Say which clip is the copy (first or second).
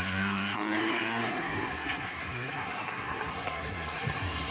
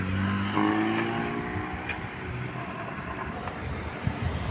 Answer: first